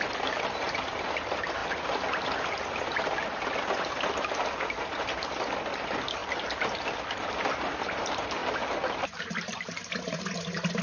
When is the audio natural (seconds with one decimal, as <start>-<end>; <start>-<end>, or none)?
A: 0.0-10.8